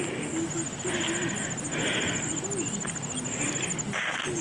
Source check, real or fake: real